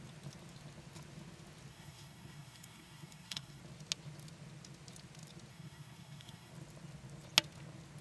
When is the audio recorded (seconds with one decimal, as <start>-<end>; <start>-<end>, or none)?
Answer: 0.0-1.7; 3.6-5.5; 6.5-8.0